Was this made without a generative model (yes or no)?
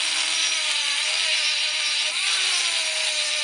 yes